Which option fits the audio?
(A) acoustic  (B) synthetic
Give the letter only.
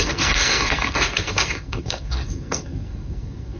B